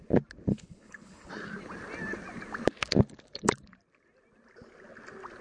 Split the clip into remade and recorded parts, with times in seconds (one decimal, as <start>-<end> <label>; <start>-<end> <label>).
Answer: 0.0-0.5 recorded; 0.5-1.3 remade; 1.3-5.4 recorded